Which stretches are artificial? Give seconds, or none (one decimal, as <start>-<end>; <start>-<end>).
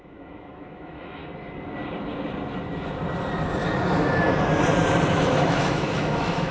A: 0.0-1.2; 5.1-6.5